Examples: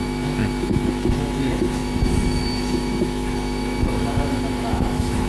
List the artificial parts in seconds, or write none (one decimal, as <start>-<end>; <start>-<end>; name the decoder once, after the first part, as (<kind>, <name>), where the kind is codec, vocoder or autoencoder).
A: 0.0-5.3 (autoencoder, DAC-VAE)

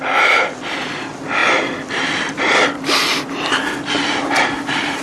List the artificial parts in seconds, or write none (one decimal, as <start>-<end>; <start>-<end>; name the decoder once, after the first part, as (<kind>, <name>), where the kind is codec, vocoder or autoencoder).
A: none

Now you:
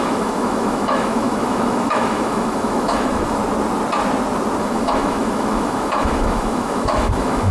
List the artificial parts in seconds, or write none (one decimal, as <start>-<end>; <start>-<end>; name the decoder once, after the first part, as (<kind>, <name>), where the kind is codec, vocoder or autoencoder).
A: 0.0-3.4 (autoencoder, DAC-VAE); 4.6-7.5

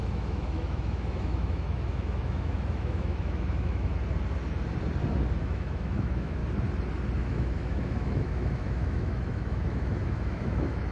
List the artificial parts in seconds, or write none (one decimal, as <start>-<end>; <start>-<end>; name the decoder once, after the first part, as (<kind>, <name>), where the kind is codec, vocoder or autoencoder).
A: 0.0-3.9 (autoencoder, DAC-VAE); 5.4-6.4; 7.2-10.9